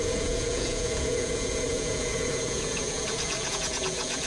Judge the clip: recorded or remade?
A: remade